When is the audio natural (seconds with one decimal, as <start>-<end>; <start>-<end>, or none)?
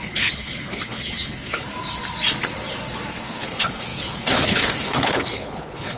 1.7-3.2